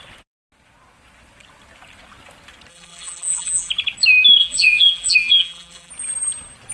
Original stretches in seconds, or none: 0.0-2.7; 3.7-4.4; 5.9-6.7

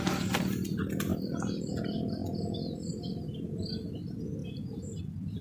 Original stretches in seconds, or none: 0.0-1.1; 1.7-5.4

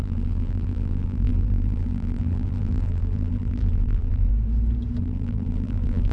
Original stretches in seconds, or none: 4.3-5.0